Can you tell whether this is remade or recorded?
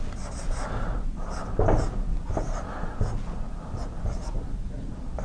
recorded